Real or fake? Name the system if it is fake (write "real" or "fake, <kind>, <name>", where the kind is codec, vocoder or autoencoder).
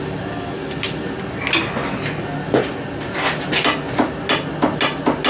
real